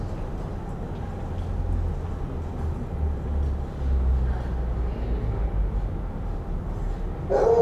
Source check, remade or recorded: recorded